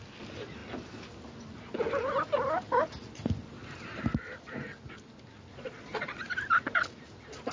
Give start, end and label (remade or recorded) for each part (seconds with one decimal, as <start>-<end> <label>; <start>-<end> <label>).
0.0-5.5 recorded; 5.5-6.2 remade; 6.2-7.5 recorded